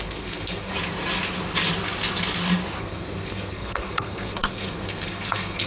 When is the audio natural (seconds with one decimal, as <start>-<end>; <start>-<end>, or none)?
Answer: 0.7-2.8